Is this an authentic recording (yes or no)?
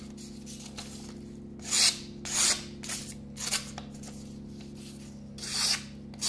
yes